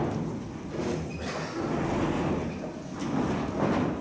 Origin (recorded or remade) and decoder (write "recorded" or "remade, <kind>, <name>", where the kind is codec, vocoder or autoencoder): recorded